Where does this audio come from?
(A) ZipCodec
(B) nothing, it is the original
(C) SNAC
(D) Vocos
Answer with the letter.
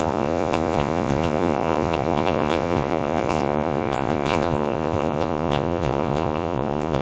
D